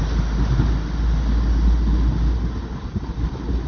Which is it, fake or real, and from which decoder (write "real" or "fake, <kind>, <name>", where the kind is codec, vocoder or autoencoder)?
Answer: real